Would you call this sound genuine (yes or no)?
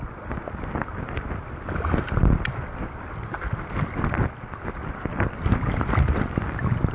yes